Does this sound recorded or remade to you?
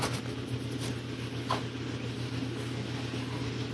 recorded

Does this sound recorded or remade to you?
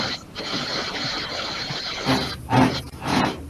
remade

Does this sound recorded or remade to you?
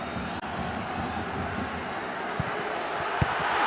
recorded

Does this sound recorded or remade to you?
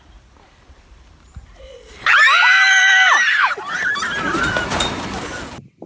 remade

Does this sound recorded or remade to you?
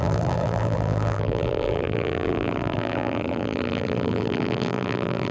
remade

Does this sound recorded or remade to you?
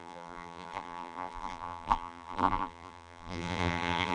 remade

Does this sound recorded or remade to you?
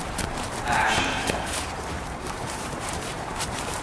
remade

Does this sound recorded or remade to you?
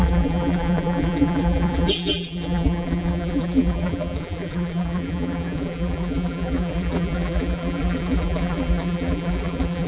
remade